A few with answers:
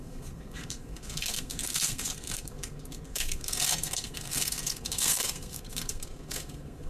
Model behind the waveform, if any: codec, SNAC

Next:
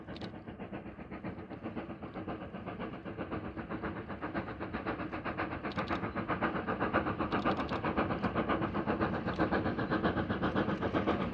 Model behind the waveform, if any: none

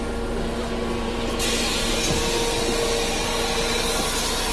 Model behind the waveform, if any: none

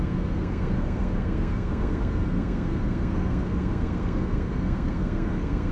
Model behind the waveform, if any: codec, SNAC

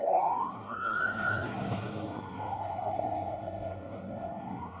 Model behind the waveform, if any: codec, SNAC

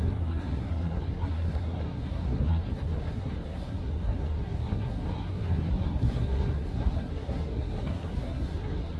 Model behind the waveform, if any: codec, SNAC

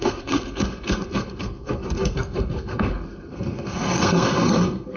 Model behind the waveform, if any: codec, SNAC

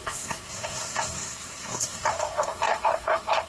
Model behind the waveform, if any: codec, SNAC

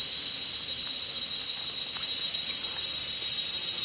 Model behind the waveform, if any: none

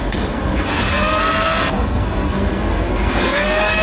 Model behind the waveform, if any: codec, SNAC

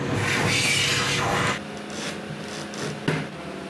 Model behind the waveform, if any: none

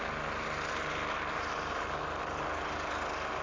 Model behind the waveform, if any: none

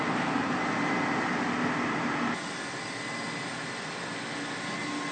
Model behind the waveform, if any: none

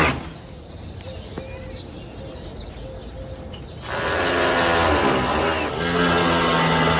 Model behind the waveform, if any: none